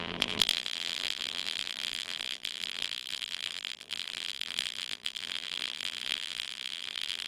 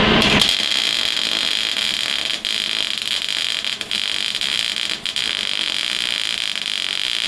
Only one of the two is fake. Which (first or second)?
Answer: first